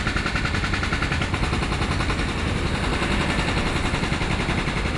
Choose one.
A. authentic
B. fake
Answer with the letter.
A